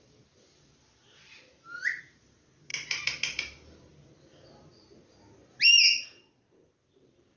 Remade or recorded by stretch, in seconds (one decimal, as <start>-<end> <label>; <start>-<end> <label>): 0.0-1.2 recorded; 1.2-2.0 remade; 2.0-7.4 recorded